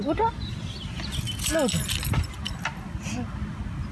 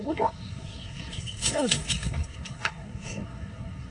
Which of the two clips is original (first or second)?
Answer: first